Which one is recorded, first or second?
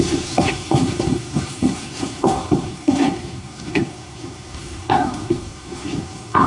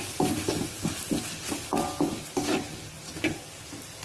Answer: second